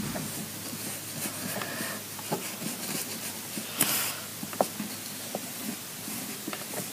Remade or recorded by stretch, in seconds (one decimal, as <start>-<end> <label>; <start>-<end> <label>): 0.0-6.9 recorded